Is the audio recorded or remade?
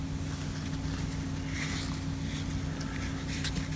recorded